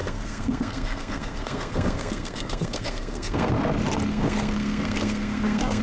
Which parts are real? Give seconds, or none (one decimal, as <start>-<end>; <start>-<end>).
3.5-4.1